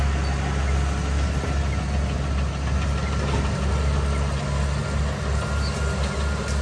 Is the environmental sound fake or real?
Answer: real